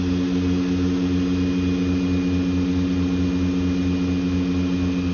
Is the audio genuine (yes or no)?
yes